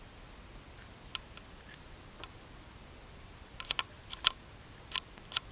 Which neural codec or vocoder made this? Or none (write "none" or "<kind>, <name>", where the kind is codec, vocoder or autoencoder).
none